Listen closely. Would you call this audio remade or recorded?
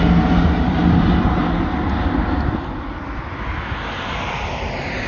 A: recorded